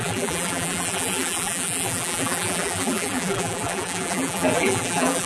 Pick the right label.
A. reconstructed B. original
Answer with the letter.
A